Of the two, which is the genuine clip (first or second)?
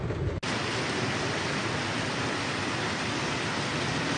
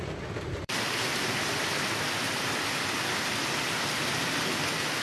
first